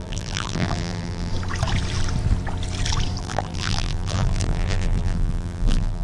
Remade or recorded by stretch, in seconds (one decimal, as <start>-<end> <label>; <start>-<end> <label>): 0.0-1.3 remade; 1.3-3.2 recorded; 3.2-6.0 remade

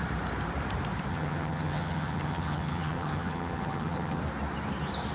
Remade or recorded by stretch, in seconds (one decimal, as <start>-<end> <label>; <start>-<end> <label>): 0.0-1.1 recorded; 1.1-4.2 remade; 4.2-5.1 recorded

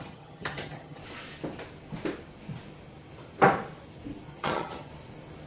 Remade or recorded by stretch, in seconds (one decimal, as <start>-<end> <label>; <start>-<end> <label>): 0.0-1.0 remade; 1.0-4.3 recorded; 4.3-4.9 remade; 4.9-5.5 recorded